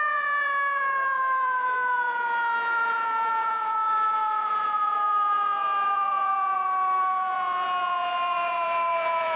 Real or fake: fake